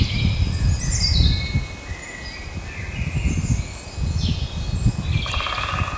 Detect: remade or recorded recorded